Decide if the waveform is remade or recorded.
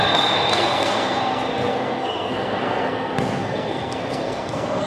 remade